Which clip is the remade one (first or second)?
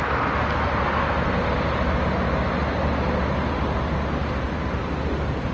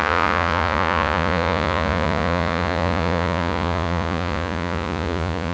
second